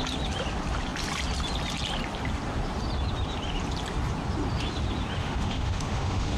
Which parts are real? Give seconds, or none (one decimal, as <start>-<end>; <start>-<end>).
0.0-5.2